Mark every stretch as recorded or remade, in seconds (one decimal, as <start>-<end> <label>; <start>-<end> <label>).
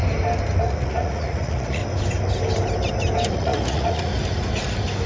0.0-0.6 recorded; 0.6-1.8 remade; 1.8-3.3 recorded; 3.3-4.1 remade; 4.1-5.1 recorded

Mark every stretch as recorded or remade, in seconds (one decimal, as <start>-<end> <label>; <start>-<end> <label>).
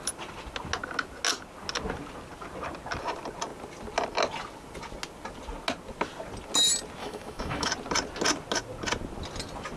0.0-7.0 recorded; 7.0-7.7 remade; 7.7-9.8 recorded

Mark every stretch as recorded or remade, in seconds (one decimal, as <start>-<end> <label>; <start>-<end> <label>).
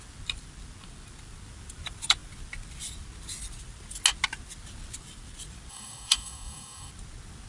0.0-5.7 recorded; 5.7-6.9 remade; 6.9-7.5 recorded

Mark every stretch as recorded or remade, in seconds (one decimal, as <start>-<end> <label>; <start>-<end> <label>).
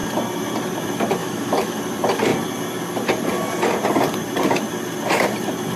0.0-1.2 recorded; 1.2-1.8 remade; 1.8-5.8 recorded